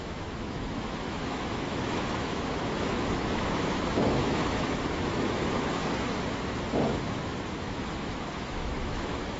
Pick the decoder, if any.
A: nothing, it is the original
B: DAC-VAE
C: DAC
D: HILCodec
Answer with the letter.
B